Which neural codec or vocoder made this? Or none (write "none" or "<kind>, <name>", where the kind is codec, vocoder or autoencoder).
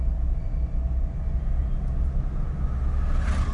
none